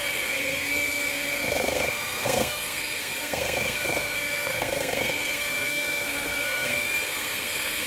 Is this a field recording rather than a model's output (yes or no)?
no